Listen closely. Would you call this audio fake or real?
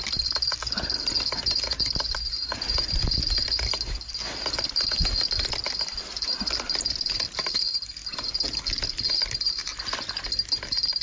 real